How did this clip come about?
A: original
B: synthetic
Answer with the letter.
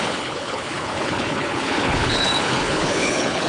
B